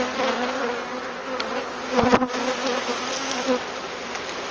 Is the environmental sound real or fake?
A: real